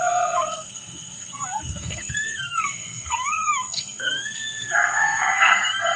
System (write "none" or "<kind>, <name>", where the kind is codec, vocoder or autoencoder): codec, SNAC